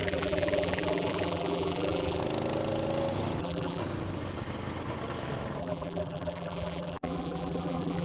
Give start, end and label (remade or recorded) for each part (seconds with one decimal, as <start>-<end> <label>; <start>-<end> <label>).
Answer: 0.0-2.2 remade; 2.2-3.4 recorded; 3.4-3.8 remade; 3.8-5.6 recorded; 5.6-8.0 remade